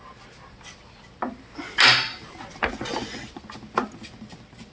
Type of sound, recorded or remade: recorded